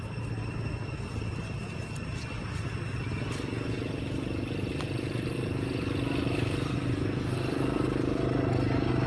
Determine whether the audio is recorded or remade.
recorded